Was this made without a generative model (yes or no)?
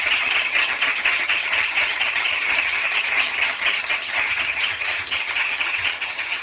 no